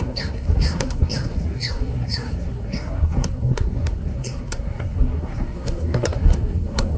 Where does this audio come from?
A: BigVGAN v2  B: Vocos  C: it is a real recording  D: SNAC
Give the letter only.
D